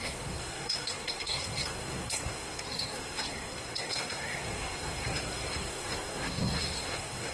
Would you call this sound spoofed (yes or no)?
yes